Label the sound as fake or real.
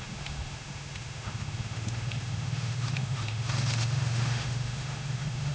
fake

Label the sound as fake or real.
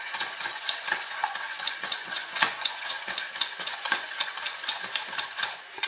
fake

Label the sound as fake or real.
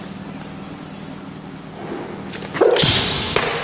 real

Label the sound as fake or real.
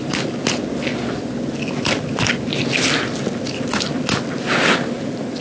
real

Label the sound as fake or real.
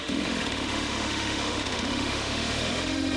fake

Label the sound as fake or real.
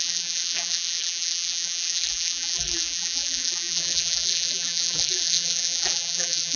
fake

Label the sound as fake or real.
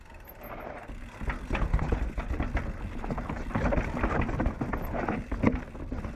real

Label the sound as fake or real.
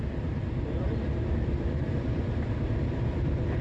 fake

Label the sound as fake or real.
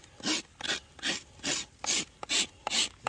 real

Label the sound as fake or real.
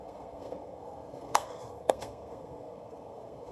fake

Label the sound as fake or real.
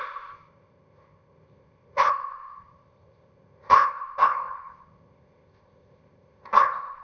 fake